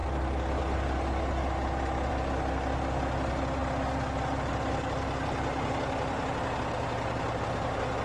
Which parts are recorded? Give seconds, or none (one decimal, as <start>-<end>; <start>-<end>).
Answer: 0.0-8.0

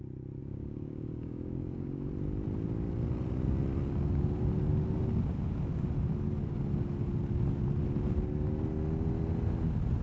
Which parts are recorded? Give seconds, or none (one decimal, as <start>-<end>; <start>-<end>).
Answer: 0.0-0.4; 2.1-10.0

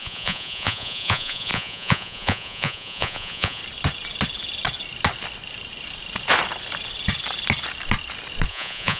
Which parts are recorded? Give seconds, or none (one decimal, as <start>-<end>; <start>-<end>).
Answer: 3.6-8.5

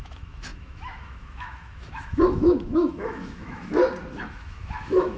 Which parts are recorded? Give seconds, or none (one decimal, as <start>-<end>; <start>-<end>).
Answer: 3.8-4.3

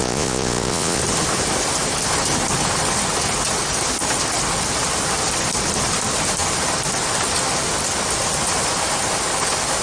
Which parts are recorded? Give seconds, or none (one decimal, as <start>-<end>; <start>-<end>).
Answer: 1.0-9.8